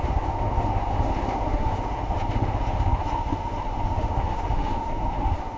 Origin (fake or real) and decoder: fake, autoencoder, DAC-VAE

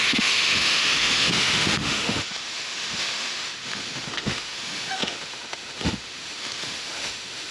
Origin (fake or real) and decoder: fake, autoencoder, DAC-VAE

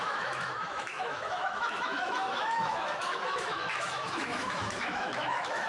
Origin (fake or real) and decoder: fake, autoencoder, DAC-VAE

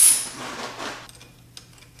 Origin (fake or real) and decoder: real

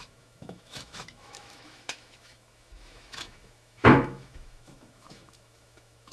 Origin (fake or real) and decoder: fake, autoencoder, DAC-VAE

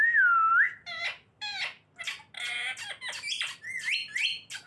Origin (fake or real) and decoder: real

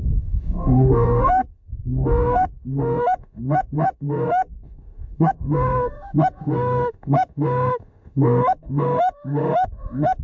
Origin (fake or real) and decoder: fake, autoencoder, DAC-VAE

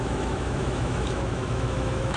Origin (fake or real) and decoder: fake, autoencoder, DAC-VAE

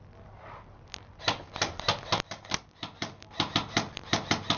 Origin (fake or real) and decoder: real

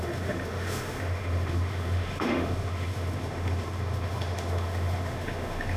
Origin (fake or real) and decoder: fake, autoencoder, DAC-VAE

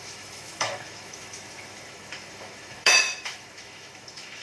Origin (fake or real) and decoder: fake, autoencoder, DAC-VAE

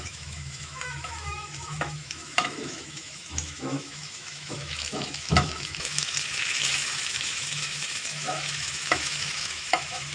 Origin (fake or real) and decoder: fake, autoencoder, DAC-VAE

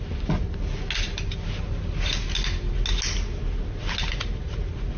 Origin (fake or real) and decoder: real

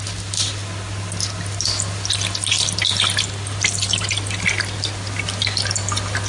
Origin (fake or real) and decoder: real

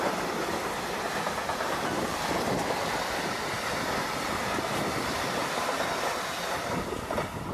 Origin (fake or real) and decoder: real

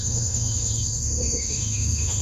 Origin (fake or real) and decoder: fake, autoencoder, DAC-VAE